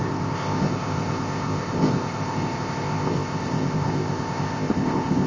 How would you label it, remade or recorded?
remade